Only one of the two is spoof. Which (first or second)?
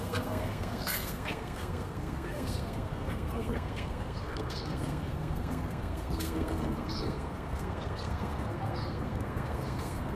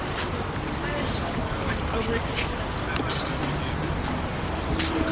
first